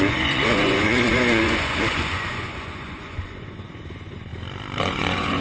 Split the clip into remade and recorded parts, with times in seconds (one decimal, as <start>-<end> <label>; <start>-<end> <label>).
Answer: 0.0-4.3 remade; 4.3-4.8 recorded; 4.8-5.4 remade